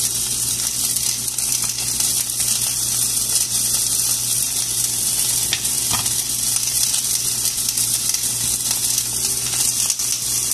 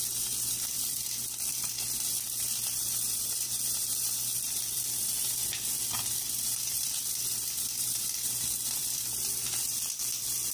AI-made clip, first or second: second